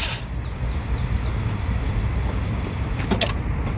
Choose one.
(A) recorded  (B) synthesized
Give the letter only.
A